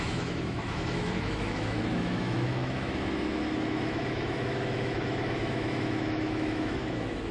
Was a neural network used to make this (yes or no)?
yes